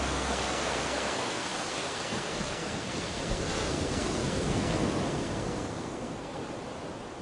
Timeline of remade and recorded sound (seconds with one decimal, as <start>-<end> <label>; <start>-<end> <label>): 0.0-6.4 remade; 6.4-7.2 recorded